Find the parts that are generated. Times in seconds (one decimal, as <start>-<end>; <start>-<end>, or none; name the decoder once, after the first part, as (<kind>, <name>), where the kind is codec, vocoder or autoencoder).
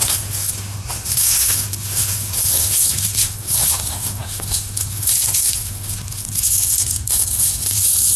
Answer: 0.0-8.2 (codec, SNAC)